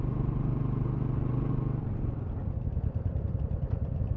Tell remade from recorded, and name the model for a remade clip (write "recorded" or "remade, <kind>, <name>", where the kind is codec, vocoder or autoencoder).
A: recorded